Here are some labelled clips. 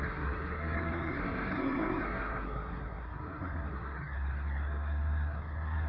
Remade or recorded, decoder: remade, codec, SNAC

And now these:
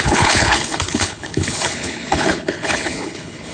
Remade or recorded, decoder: remade, codec, HILCodec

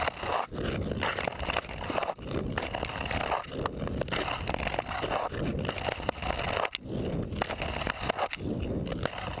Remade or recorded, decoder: recorded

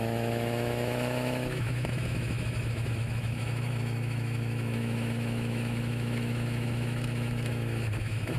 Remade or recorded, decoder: remade, autoencoder, DAC-VAE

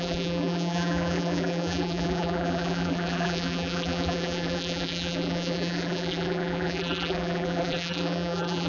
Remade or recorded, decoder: remade, vocoder, BigVGAN v2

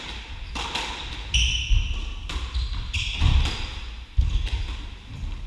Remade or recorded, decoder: recorded